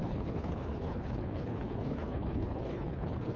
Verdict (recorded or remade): remade